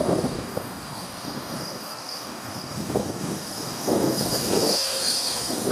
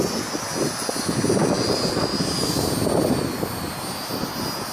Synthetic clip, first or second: first